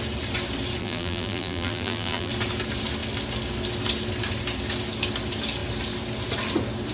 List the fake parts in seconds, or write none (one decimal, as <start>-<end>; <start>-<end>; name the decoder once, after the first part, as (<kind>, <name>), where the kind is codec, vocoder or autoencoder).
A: 0.8-2.3 (vocoder, BigVGAN v2)